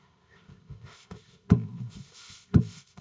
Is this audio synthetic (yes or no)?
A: yes